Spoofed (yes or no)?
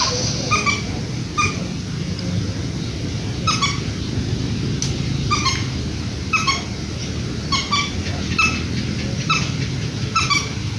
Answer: no